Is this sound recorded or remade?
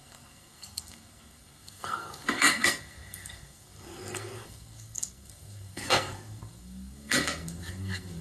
remade